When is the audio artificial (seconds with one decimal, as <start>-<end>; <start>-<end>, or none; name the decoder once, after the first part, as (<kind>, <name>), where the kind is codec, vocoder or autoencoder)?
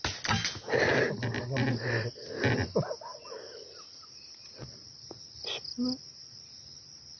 none